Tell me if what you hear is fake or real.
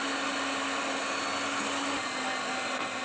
real